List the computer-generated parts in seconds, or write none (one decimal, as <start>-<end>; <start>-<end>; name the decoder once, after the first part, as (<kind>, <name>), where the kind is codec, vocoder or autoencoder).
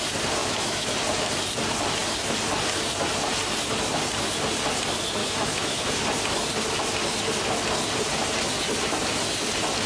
0.4-0.9 (autoencoder, DAC-VAE); 5.2-5.9